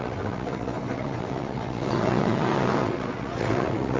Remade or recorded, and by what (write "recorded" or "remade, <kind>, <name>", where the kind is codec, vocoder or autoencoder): remade, vocoder, WaveNeXt